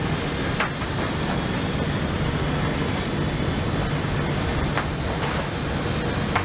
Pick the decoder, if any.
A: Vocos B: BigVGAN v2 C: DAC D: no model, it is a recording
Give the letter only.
D